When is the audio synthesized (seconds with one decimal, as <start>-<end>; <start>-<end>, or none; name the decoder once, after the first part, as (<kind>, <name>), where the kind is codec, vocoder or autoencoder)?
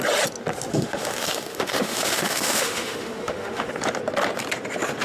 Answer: 0.7-3.7 (autoencoder, DAC-VAE)